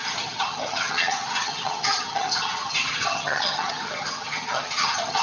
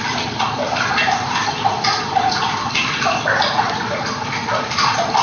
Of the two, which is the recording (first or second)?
second